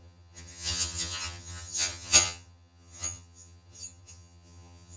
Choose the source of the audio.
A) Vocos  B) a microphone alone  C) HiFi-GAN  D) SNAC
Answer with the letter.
C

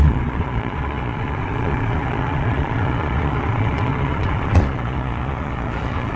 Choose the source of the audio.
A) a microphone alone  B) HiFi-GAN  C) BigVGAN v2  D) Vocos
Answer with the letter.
D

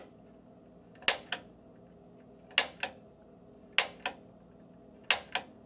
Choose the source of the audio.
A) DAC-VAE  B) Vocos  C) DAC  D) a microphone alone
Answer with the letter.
D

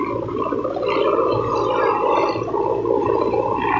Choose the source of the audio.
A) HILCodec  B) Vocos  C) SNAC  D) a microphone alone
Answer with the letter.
D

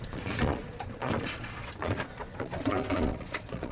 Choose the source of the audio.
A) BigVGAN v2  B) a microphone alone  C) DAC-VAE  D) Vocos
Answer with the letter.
D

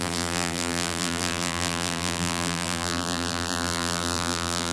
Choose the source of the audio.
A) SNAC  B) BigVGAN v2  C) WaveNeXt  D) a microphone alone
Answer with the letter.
B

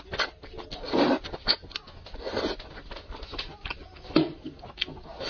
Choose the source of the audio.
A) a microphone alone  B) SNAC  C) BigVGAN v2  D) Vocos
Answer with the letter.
A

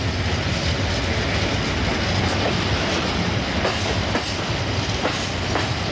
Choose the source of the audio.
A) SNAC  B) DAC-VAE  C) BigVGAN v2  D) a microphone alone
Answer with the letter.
D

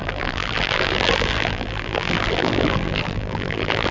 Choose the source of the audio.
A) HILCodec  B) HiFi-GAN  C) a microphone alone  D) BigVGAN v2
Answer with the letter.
D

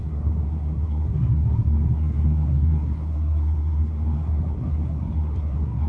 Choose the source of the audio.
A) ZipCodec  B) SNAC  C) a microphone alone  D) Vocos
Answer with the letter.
B